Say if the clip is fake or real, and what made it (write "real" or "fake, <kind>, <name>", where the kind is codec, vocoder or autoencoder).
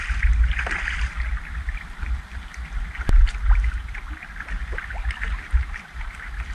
real